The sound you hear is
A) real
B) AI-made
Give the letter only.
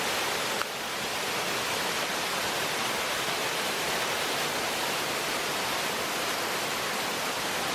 A